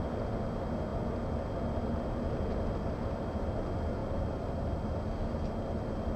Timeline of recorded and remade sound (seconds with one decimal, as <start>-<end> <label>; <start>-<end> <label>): 0.0-6.2 recorded